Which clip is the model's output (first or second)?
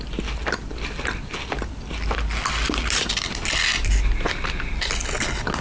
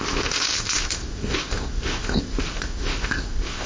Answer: second